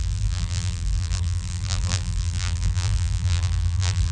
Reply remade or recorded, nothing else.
remade